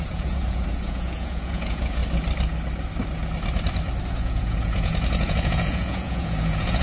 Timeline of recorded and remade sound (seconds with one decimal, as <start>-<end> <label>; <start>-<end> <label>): 0.0-2.0 remade; 2.0-4.0 recorded; 4.0-6.8 remade